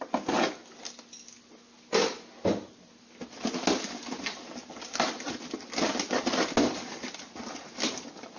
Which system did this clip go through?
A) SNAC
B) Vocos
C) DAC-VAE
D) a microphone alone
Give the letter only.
D